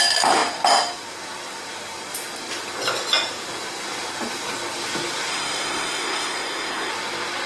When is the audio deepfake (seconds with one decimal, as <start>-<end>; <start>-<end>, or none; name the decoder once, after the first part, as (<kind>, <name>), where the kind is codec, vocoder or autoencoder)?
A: 5.3-6.9 (codec, SNAC)